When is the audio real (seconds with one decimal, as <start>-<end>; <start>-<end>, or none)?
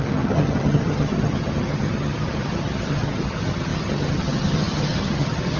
none